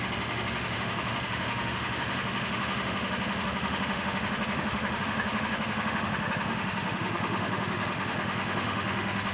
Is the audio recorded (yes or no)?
no